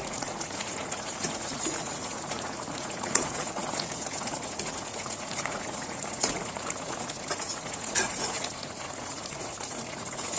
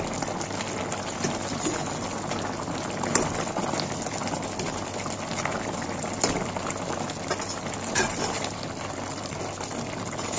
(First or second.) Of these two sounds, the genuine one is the second